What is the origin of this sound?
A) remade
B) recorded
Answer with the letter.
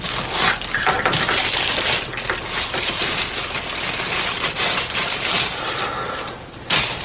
B